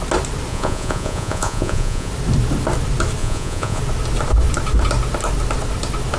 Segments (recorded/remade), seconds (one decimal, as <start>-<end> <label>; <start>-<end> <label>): 0.0-0.5 recorded; 0.5-2.1 remade; 2.1-3.2 recorded; 3.2-3.8 remade; 3.8-6.2 recorded